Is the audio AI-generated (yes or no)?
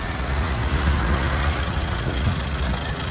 yes